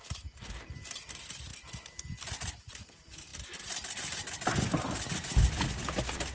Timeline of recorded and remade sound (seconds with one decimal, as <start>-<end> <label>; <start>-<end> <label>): 0.0-6.3 recorded